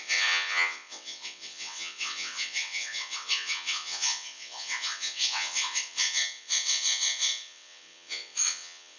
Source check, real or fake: fake